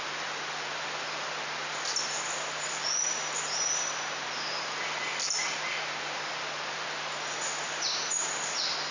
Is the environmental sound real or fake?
real